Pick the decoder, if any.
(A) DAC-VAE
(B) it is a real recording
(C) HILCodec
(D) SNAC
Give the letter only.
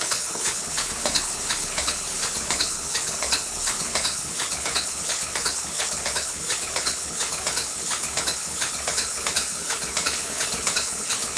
C